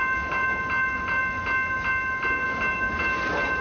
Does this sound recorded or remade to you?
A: recorded